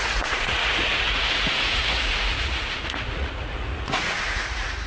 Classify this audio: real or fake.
fake